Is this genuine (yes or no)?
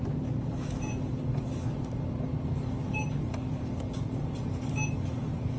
yes